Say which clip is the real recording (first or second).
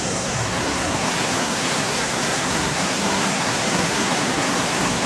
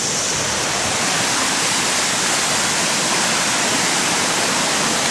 second